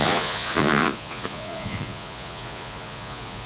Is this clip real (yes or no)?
no